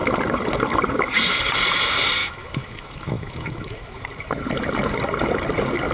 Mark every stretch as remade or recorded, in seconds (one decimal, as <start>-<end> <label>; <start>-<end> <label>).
0.0-2.2 recorded; 2.2-4.0 remade; 4.0-5.9 recorded